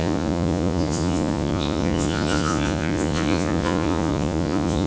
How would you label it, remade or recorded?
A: remade